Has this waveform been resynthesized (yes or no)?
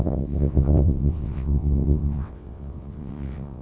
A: yes